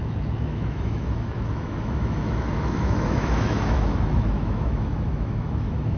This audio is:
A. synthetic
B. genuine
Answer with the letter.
A